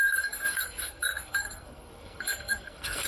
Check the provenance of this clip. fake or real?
fake